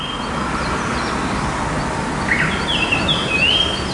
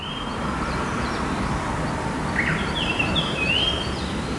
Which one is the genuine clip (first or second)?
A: first